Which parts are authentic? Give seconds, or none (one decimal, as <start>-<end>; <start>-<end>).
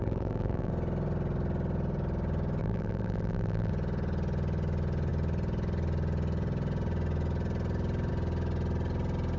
0.7-2.6; 3.7-9.4